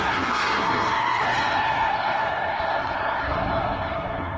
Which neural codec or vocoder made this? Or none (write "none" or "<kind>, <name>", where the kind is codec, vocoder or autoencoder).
codec, SNAC